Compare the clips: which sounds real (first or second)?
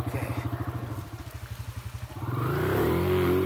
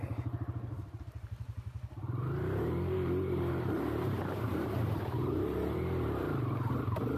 first